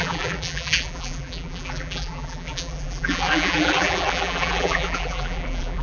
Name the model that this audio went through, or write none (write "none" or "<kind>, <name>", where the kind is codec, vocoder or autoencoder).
vocoder, BigVGAN v2